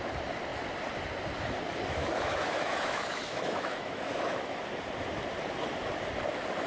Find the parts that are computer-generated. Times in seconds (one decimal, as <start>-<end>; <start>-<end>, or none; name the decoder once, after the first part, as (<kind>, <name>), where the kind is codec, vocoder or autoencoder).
2.0-4.6 (autoencoder, DAC-VAE)